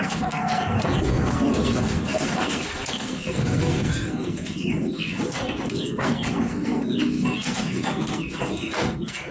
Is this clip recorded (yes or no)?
no